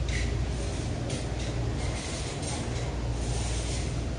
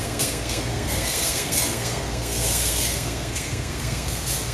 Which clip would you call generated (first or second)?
second